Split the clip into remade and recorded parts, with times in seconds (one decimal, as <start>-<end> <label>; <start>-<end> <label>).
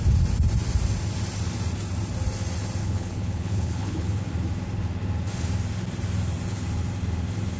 0.0-2.8 recorded; 2.8-4.3 remade; 4.3-7.6 recorded